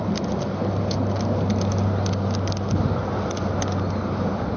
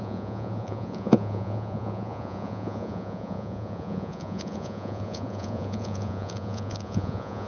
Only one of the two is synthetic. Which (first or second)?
second